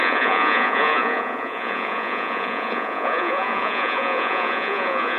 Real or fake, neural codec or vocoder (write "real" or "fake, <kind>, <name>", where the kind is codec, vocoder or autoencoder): fake, vocoder, Vocos